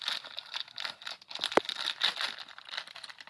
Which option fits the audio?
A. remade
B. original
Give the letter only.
B